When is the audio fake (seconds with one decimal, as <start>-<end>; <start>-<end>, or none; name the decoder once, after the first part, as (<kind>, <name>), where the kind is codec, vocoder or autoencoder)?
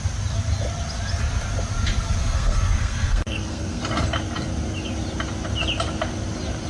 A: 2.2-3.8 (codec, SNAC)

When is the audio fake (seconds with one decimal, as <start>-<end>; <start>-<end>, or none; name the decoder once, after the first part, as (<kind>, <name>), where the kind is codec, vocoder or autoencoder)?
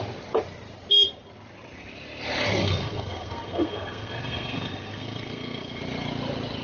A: 2.6-5.8 (codec, SNAC)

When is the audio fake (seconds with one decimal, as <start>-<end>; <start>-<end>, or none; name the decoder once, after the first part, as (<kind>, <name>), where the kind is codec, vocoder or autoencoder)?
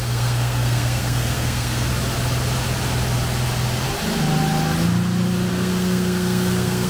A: 0.0-1.9 (codec, SNAC); 5.5-6.9